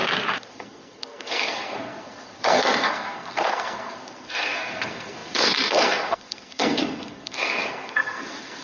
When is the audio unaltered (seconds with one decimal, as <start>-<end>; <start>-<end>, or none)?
0.0-0.5